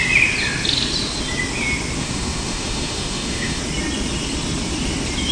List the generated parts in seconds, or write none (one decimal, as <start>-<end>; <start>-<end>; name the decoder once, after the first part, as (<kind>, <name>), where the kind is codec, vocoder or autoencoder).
2.0-3.6 (autoencoder, DAC-VAE)